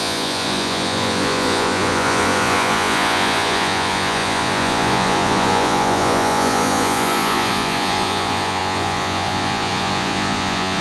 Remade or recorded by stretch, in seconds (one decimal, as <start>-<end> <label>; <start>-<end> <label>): 0.0-10.8 remade